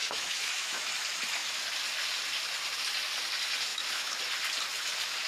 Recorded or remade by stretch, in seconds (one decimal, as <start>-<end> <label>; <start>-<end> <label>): 0.0-0.8 remade; 0.8-3.7 recorded; 3.7-4.2 remade; 4.2-5.3 recorded